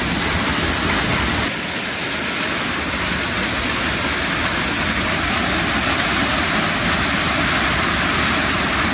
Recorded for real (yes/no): yes